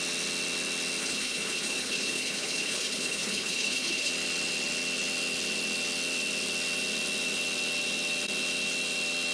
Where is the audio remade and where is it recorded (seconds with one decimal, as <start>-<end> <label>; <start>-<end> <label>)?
0.0-1.0 recorded; 1.0-4.1 remade; 4.1-9.3 recorded